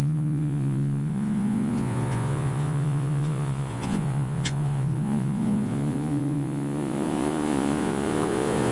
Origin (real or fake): fake